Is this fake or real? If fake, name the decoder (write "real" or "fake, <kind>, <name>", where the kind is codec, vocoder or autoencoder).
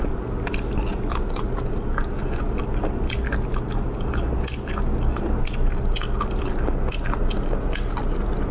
real